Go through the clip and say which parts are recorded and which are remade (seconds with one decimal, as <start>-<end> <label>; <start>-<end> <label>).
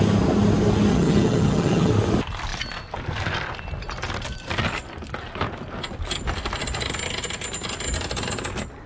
0.0-0.9 recorded; 0.9-1.9 remade; 1.9-8.9 recorded